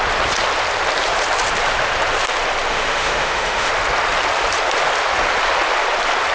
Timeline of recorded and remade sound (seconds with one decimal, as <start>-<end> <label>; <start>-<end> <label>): 0.0-2.7 recorded; 2.7-3.7 remade; 3.7-6.3 recorded